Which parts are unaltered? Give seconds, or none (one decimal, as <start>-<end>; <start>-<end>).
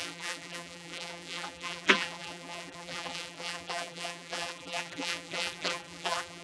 none